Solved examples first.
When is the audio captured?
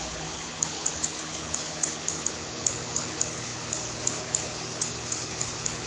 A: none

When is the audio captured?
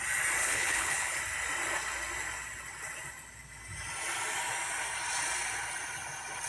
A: 0.0-0.4; 1.2-6.5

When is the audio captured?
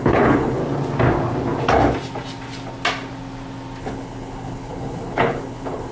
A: 0.6-3.8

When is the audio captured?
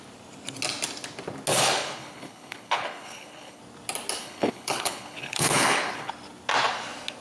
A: 0.0-1.5; 3.6-4.2; 6.1-7.2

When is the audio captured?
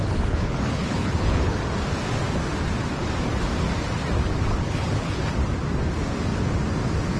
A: 1.6-4.5; 5.2-7.2